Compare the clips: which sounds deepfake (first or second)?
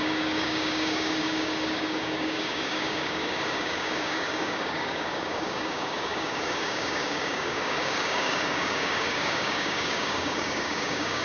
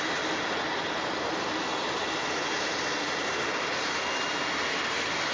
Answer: first